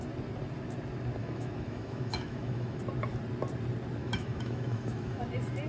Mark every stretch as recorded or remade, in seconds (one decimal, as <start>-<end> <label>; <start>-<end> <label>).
0.0-1.2 recorded; 1.2-2.8 remade; 2.8-4.0 recorded; 4.0-5.2 remade; 5.2-5.7 recorded